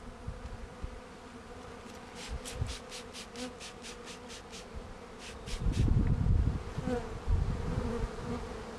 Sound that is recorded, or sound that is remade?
recorded